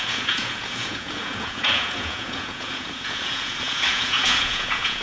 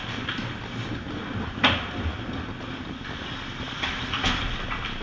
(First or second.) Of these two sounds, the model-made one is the first